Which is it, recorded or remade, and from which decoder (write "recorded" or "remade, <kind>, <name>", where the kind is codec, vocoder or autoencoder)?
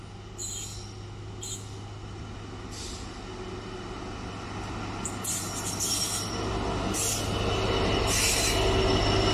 recorded